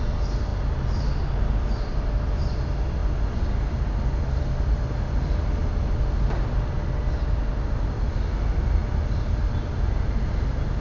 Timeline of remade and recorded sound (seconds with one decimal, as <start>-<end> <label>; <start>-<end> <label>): 0.0-10.8 recorded